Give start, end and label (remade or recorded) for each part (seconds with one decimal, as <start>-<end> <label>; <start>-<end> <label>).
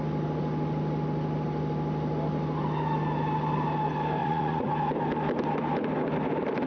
0.0-4.2 recorded; 4.2-4.7 remade; 4.7-6.7 recorded